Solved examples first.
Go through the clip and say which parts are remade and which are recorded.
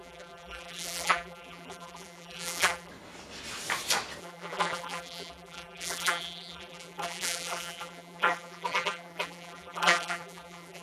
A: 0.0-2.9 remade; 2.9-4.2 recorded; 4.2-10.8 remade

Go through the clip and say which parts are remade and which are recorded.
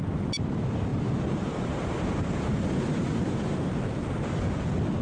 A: 0.0-0.9 recorded; 0.9-3.9 remade; 3.9-5.0 recorded